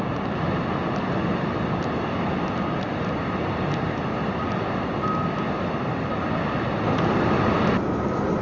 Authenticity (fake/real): real